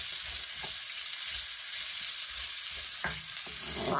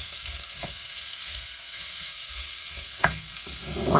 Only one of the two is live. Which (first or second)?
first